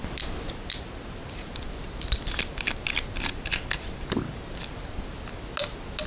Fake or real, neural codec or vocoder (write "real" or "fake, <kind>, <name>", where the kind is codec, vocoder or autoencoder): real